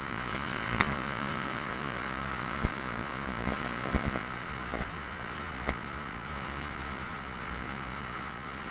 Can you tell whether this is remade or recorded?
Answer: remade